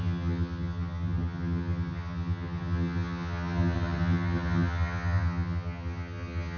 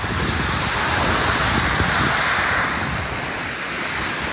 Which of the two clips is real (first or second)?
second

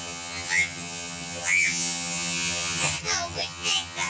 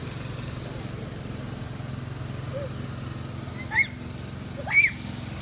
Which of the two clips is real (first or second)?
second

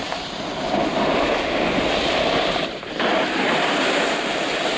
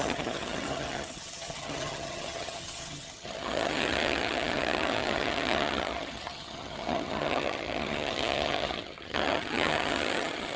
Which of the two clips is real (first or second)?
first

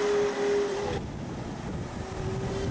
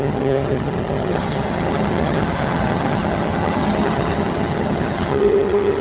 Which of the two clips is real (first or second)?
first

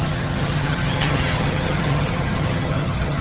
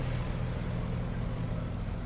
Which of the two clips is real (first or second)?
second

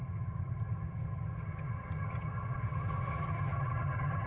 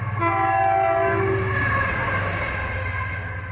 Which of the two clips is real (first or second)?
second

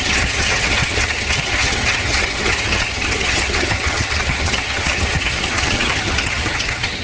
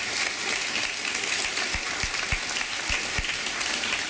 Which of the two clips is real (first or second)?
second